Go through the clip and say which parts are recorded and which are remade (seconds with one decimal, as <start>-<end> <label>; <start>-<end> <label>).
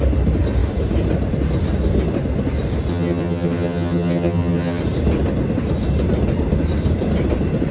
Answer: 0.0-2.9 recorded; 2.9-4.8 remade; 4.8-7.7 recorded